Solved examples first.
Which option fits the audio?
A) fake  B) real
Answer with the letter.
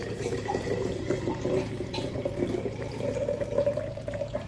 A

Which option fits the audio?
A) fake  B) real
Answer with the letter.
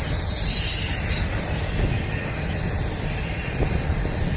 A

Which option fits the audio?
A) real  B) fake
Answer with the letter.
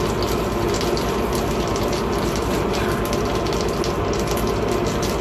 A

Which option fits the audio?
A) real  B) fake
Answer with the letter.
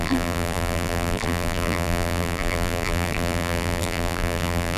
B